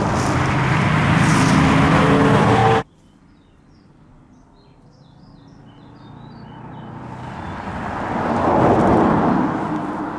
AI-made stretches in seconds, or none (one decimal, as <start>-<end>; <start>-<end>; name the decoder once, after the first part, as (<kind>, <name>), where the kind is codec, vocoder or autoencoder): none